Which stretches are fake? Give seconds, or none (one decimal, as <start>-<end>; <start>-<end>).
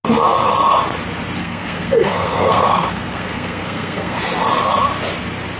1.4-4.2